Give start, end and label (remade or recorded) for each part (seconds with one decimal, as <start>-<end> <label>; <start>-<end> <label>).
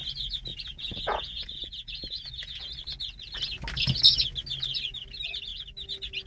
0.0-0.5 recorded; 0.5-2.7 remade; 2.7-6.3 recorded